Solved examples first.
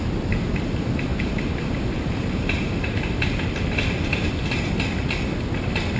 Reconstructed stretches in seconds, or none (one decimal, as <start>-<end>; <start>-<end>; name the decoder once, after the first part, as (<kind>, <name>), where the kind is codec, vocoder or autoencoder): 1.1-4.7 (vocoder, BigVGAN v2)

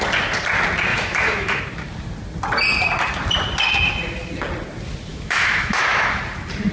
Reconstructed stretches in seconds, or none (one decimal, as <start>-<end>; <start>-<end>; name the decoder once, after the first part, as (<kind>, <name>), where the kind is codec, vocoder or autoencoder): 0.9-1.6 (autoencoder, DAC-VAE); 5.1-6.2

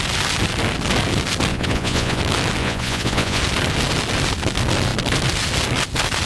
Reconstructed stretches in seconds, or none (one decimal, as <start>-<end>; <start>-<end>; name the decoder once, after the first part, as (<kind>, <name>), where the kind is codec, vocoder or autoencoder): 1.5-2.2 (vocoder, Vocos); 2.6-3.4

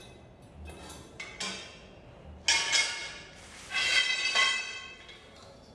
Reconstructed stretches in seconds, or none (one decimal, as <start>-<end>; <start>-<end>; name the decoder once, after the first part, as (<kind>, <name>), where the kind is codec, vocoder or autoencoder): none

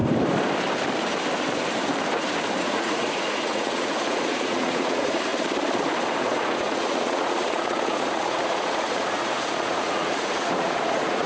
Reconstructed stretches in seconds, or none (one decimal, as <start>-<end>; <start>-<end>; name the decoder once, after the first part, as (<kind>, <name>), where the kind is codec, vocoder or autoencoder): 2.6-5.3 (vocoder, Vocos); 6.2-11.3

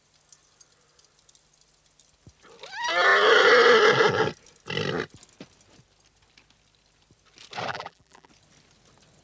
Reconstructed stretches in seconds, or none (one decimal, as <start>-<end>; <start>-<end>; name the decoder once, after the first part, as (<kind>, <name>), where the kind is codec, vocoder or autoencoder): 7.7-8.3 (vocoder, BigVGAN v2)